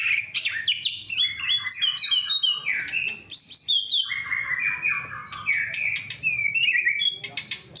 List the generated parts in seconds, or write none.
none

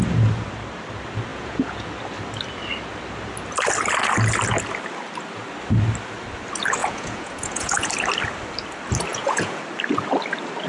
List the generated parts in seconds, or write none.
1.3-1.9 (vocoder, Vocos); 6.8-7.9; 9.1-9.6